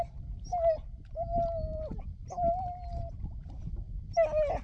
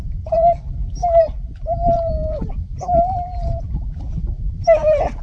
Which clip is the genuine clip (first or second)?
first